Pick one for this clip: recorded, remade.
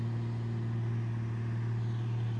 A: recorded